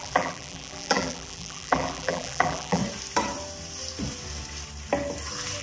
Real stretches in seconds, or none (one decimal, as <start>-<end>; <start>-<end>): 2.8-5.6